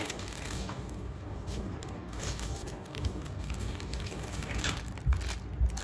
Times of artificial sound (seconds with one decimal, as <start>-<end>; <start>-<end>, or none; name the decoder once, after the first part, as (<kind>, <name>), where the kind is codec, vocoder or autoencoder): 0.0-4.8 (codec, DAC)